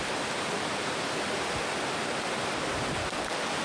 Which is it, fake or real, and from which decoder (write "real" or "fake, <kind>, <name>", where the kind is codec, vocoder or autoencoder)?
real